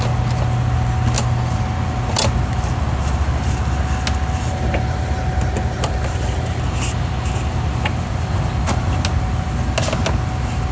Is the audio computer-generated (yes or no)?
no